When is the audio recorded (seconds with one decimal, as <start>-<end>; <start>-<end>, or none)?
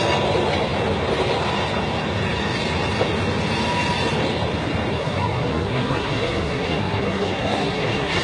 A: 0.0-4.9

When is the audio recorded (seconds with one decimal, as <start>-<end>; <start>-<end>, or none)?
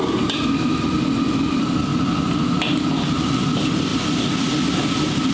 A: 0.0-5.3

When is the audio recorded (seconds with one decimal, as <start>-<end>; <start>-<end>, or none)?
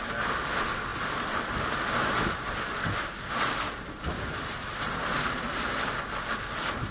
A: 0.0-6.9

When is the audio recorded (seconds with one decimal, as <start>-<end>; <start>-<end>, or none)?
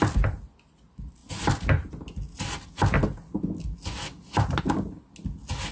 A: 0.0-5.7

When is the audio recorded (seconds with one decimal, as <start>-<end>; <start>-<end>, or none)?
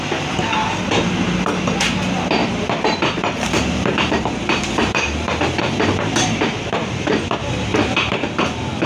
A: 0.0-2.4; 7.2-7.7; 8.3-8.9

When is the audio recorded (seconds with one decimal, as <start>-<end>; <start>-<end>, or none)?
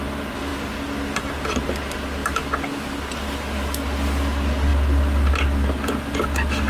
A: 0.0-6.7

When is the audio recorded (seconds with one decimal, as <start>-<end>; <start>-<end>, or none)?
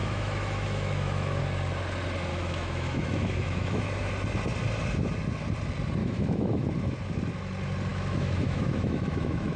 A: 1.4-2.3; 4.1-6.0; 6.7-7.9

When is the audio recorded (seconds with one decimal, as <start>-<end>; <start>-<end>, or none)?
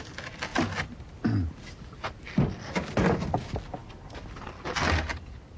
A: 0.0-5.6